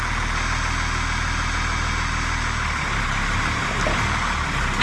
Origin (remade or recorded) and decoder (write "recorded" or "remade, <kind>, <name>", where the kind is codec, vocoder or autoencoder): recorded